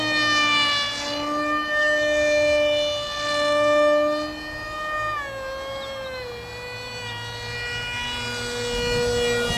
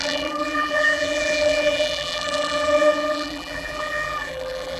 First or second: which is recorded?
first